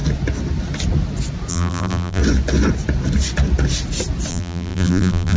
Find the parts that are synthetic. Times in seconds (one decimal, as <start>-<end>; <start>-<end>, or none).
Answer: 1.5-2.2; 4.3-5.4